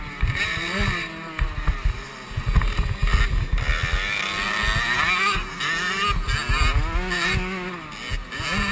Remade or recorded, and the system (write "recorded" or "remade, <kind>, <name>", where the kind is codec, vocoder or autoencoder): recorded